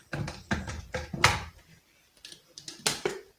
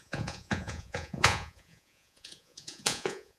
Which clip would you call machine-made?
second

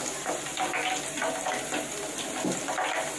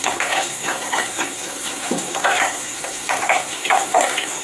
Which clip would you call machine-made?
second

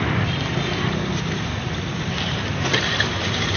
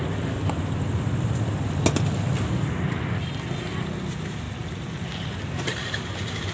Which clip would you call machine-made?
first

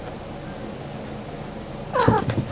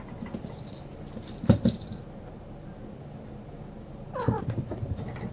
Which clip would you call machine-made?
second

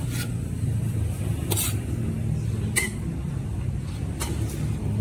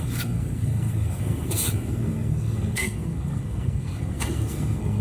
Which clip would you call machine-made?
second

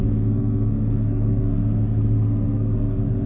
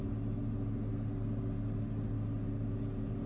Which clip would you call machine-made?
first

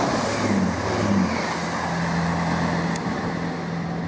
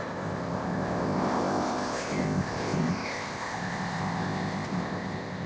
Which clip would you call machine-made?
second